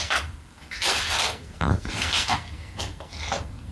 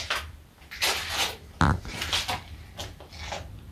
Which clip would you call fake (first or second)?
first